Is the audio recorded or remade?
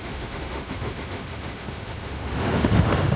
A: remade